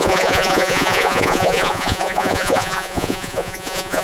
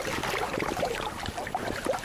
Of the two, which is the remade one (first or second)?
first